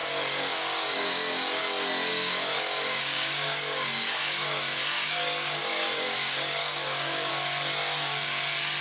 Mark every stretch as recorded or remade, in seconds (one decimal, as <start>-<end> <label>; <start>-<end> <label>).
0.0-1.6 remade; 1.6-2.1 recorded; 2.1-7.3 remade; 7.3-8.8 recorded